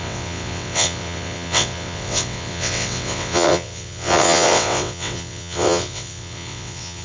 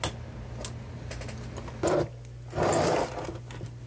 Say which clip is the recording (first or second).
second